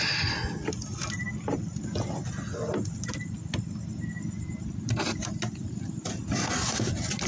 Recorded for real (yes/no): yes